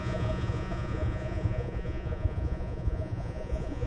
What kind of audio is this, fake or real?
fake